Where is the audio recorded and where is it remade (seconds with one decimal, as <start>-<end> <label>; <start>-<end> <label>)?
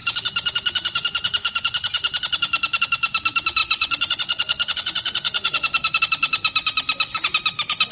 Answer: 0.0-3.6 recorded; 3.6-6.0 remade; 6.0-7.9 recorded